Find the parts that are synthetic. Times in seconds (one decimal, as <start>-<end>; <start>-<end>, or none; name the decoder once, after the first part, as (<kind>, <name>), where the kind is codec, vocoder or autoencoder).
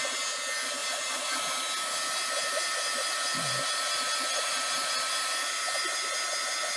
0.8-1.4 (vocoder, BigVGAN v2); 2.4-5.8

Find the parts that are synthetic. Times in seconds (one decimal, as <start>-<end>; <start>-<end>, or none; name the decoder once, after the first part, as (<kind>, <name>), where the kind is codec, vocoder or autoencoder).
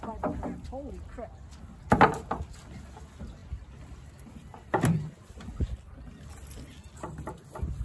none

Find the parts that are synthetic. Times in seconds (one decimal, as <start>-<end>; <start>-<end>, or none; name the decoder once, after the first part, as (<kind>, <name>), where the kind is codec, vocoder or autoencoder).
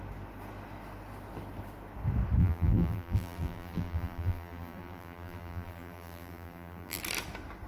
2.4-7.0 (vocoder, BigVGAN v2)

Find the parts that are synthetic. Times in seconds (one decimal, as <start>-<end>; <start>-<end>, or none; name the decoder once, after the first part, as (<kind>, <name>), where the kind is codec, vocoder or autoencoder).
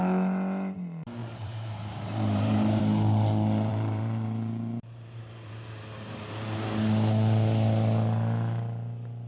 1.2-2.8 (vocoder, BigVGAN v2); 3.7-6.6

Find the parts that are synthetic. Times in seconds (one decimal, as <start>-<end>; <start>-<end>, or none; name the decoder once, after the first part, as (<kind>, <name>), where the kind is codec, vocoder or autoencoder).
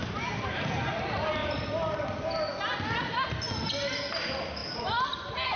0.0-0.7 (vocoder, BigVGAN v2)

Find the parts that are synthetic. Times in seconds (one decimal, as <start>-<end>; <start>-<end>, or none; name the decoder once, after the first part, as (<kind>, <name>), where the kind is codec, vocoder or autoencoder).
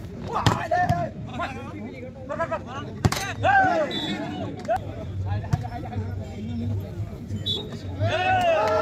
0.0-1.3 (vocoder, BigVGAN v2); 2.3-5.1; 7.3-8.8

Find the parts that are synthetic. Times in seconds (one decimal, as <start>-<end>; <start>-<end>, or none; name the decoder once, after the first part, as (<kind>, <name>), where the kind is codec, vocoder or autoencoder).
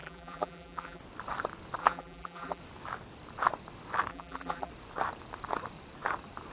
0.0-1.0 (vocoder, BigVGAN v2); 1.8-2.6; 4.1-4.7